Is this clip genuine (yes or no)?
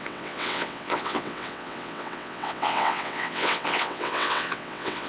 no